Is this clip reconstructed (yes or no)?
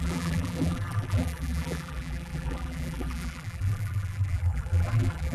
yes